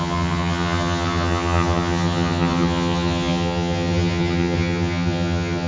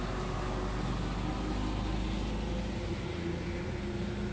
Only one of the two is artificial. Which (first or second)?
first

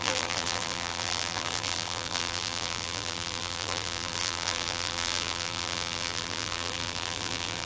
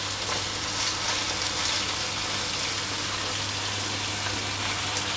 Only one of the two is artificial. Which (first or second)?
first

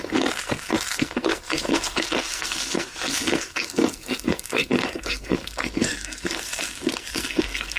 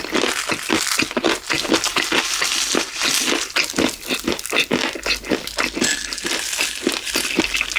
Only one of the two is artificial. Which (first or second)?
first